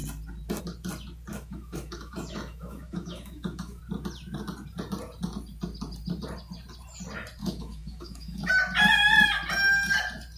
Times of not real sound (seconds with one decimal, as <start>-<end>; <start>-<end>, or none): 1.3-3.8; 7.4-8.5